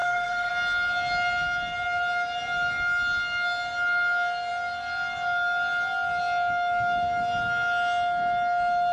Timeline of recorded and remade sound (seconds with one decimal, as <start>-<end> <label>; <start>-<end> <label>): 0.0-0.5 remade; 0.5-8.9 recorded